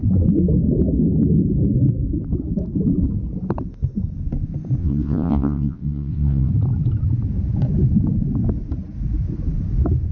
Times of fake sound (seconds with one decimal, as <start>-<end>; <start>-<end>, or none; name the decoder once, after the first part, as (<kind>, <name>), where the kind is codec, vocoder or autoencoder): 4.8-6.5 (vocoder, WaveNeXt)